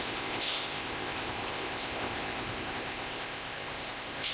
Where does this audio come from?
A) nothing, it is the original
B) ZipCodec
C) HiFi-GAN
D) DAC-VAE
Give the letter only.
B